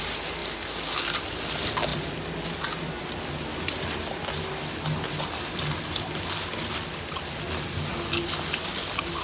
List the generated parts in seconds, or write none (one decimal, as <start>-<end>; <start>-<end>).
none